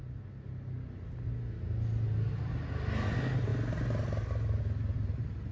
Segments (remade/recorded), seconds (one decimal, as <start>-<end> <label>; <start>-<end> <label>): 0.0-5.5 recorded